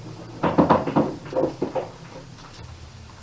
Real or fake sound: fake